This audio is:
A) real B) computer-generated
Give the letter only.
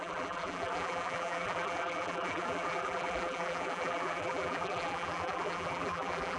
B